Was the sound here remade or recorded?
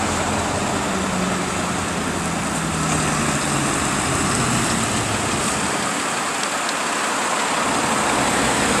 recorded